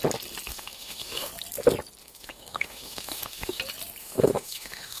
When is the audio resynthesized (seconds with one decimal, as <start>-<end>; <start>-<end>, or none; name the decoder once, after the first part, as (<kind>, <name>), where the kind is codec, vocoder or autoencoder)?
0.5-1.3 (autoencoder, DAC-VAE); 2.0-3.6; 4.0-5.0